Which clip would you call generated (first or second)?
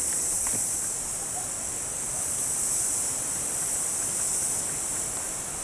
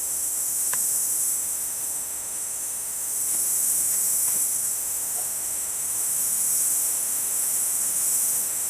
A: second